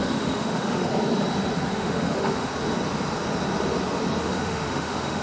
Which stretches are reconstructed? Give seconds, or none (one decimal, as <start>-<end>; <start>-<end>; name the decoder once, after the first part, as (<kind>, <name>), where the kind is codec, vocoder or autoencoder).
0.0-0.9 (autoencoder, DAC-VAE); 1.7-2.5; 4.2-5.2